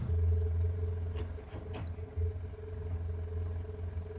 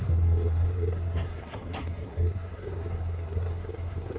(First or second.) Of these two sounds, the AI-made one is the second